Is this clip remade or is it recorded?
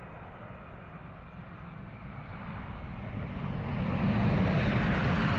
recorded